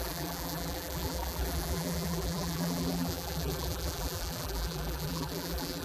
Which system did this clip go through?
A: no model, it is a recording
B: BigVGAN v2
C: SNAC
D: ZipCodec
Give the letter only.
B